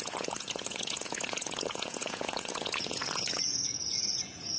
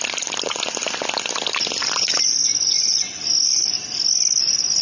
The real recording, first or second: second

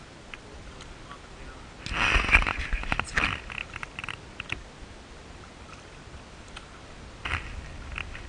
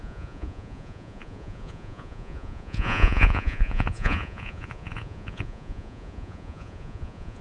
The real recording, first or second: first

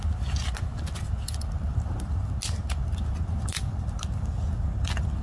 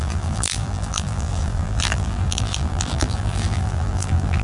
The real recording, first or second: first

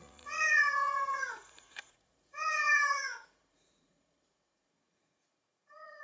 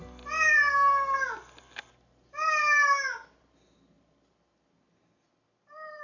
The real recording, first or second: second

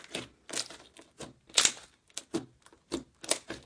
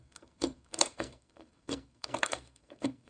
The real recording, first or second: first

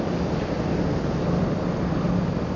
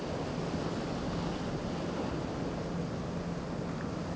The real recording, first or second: second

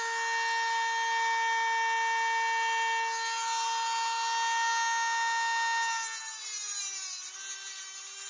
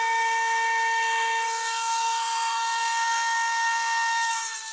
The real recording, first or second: first